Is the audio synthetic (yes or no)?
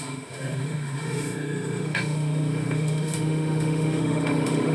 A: yes